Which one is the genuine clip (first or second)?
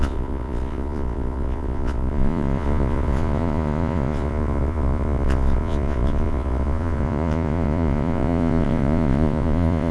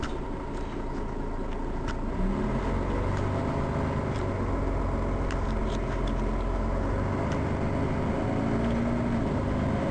second